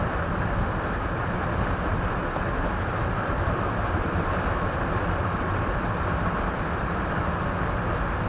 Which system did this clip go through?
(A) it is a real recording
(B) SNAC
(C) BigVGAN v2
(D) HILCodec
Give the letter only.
A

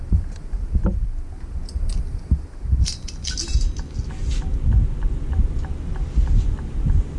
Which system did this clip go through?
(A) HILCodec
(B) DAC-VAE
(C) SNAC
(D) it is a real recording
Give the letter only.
D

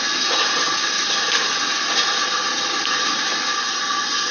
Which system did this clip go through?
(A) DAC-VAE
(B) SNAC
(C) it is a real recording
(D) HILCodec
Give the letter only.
C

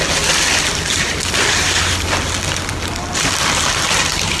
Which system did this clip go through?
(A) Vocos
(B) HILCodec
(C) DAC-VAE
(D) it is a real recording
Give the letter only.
D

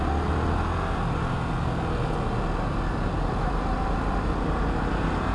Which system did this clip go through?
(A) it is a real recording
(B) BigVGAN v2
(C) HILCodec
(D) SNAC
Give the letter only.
A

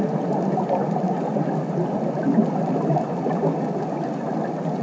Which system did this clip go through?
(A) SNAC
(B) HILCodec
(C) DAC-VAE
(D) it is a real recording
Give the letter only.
D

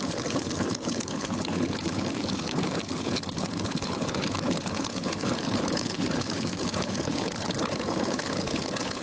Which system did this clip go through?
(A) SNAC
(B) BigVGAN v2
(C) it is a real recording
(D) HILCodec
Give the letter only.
D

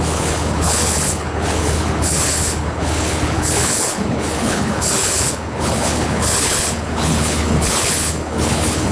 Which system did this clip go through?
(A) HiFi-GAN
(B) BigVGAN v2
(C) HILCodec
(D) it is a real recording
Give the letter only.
C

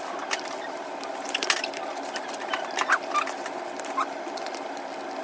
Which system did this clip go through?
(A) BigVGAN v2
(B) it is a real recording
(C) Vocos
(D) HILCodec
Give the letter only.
B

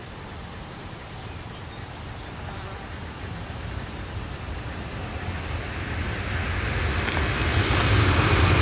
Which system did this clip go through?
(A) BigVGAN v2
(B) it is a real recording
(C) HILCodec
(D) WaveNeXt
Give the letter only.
B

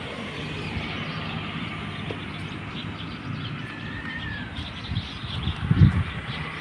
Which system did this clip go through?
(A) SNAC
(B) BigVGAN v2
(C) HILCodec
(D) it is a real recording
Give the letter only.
D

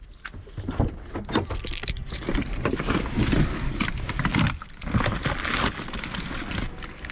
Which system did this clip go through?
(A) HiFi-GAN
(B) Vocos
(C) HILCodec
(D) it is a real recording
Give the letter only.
D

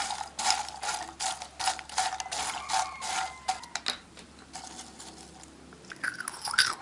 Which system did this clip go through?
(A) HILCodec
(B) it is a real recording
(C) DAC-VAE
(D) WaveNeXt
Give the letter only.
B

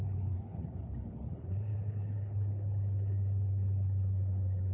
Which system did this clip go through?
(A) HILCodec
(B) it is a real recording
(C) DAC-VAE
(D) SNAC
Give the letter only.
A